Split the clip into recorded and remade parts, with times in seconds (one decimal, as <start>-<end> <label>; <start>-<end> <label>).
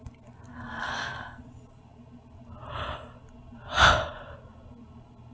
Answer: 0.0-0.5 recorded; 0.5-1.4 remade; 1.4-5.3 recorded